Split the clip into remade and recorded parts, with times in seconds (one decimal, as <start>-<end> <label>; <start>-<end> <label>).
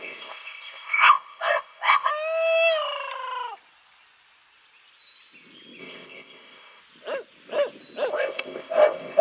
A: 0.0-2.1 remade; 2.1-5.8 recorded; 5.8-6.8 remade; 6.8-8.1 recorded; 8.1-9.2 remade